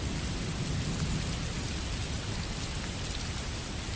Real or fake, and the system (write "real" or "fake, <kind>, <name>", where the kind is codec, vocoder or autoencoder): real